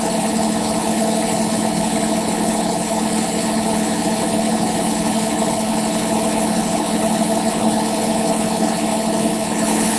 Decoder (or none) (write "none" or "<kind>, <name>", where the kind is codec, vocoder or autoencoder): codec, HILCodec